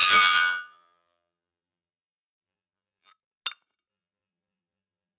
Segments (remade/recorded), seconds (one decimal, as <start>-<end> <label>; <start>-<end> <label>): 0.0-3.1 remade; 3.1-3.9 recorded; 3.9-5.2 remade